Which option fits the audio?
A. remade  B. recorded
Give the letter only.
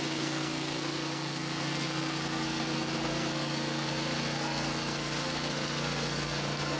A